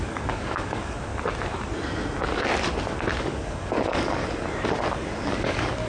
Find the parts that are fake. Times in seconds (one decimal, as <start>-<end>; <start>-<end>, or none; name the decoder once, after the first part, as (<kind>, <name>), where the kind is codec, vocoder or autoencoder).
0.0-1.1 (codec, DAC); 3.2-4.2; 5.2-5.9